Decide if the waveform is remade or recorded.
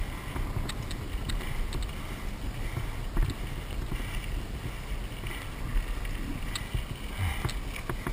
recorded